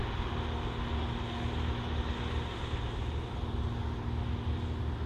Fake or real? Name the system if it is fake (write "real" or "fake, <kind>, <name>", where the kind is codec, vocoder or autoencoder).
real